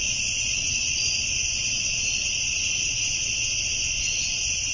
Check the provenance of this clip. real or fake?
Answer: real